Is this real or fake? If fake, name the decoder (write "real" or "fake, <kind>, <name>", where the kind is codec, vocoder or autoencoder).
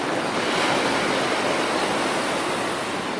real